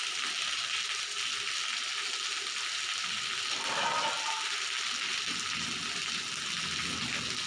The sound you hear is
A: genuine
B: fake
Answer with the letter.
A